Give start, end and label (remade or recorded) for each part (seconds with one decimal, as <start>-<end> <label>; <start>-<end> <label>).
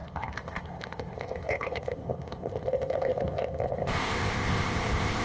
0.0-5.2 remade